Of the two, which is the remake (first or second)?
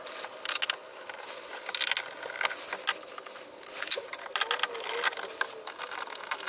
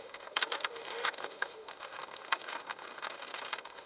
second